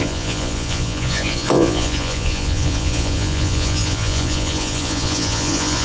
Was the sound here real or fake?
fake